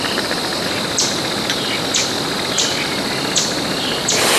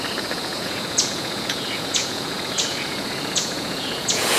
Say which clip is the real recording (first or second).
first